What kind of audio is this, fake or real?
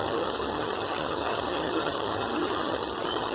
fake